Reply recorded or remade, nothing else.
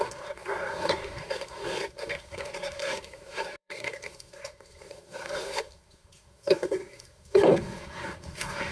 remade